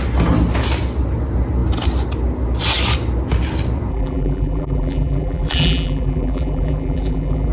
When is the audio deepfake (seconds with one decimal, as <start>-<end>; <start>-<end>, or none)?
3.9-7.5